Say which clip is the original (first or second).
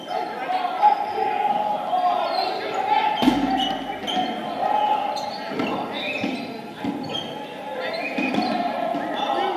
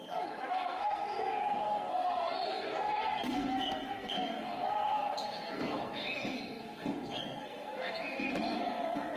first